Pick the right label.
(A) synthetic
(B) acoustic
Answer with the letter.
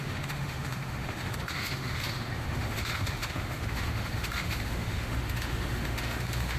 A